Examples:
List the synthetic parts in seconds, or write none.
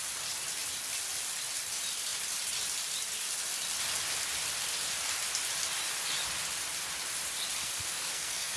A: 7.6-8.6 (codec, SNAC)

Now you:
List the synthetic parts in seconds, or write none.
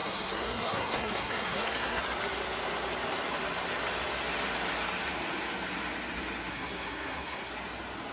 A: 0.0-2.0 (codec, SNAC); 6.5-7.5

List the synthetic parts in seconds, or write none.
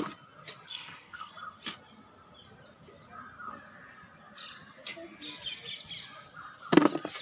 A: 0.7-1.3 (codec, SNAC)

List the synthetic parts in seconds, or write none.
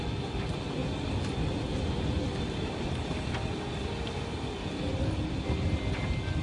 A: none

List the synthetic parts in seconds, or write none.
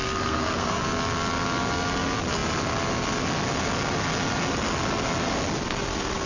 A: 0.0-0.8 (codec, SNAC)